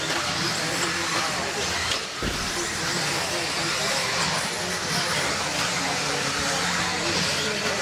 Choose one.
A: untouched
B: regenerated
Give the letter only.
A